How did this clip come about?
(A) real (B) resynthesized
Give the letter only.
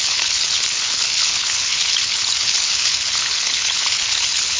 B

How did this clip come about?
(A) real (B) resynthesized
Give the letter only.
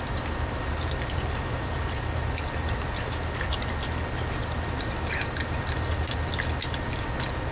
A